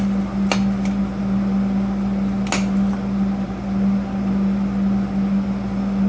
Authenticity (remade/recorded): recorded